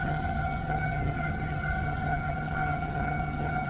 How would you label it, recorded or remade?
remade